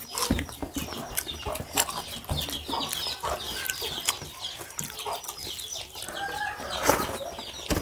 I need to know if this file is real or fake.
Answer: real